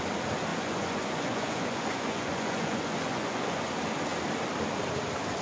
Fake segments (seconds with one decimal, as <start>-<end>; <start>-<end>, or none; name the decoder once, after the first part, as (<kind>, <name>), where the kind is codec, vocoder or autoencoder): 0.5-3.7 (vocoder, Vocos)